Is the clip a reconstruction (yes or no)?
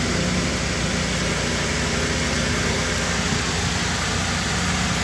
no